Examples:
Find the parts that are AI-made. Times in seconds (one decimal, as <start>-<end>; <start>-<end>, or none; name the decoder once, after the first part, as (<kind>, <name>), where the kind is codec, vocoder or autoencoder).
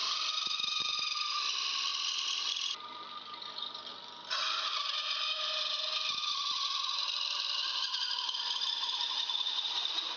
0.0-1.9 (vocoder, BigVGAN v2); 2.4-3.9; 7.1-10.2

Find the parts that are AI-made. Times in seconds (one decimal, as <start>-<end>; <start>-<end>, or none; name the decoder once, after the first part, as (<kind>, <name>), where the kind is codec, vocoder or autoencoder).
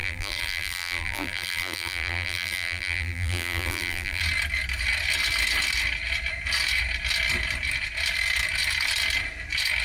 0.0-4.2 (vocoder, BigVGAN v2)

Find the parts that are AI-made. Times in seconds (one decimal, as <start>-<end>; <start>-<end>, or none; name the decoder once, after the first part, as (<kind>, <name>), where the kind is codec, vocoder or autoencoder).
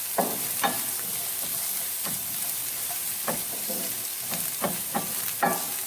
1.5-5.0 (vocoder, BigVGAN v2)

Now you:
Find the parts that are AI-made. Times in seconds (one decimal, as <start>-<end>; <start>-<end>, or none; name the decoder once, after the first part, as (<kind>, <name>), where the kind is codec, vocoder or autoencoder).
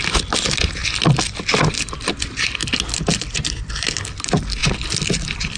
4.6-5.6 (vocoder, BigVGAN v2)